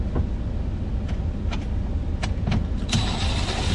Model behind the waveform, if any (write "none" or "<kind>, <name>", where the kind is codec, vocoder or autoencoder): none